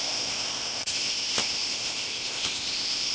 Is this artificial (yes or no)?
yes